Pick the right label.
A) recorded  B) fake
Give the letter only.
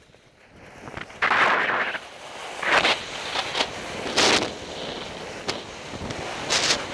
A